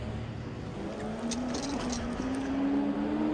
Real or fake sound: real